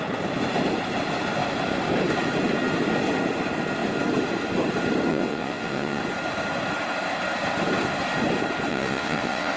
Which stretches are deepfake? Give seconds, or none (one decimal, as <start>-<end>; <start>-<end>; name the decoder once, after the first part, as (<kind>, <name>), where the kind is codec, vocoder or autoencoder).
5.1-6.0 (vocoder, WaveNeXt); 8.7-9.6